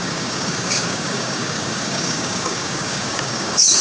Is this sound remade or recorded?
remade